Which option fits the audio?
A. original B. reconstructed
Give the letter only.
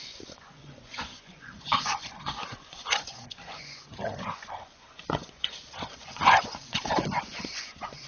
B